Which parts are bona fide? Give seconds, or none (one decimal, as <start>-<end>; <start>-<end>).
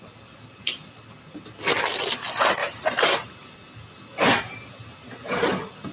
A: 0.0-2.6; 3.3-5.9